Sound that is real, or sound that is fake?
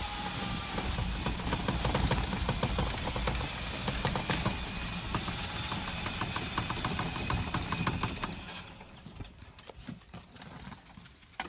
real